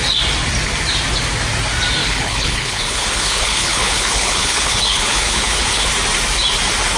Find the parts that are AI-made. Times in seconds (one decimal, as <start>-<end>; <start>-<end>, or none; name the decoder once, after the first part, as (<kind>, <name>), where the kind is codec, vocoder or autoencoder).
2.0-5.9 (codec, HILCodec)